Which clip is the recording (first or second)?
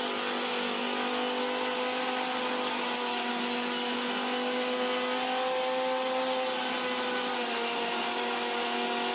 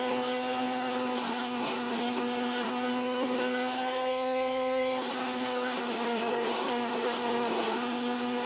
first